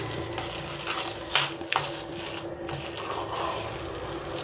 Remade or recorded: recorded